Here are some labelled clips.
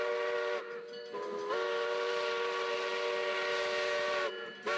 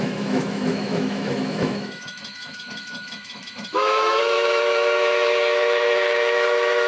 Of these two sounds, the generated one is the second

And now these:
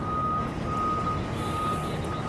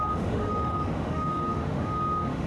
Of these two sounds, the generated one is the second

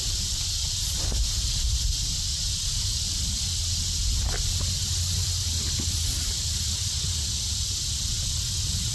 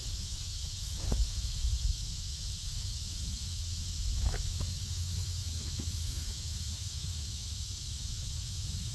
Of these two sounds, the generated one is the second